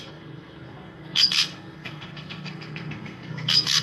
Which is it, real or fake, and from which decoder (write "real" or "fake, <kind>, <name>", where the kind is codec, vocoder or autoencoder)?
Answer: fake, codec, SNAC